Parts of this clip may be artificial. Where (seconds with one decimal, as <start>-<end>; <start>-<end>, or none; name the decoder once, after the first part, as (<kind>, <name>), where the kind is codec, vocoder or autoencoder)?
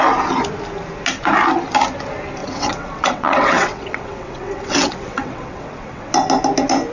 2.4-6.1 (vocoder, WaveNeXt)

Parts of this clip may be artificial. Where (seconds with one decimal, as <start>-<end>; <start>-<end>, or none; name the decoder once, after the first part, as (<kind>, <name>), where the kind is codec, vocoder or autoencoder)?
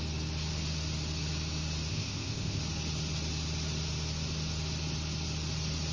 1.9-2.6 (codec, ZipCodec)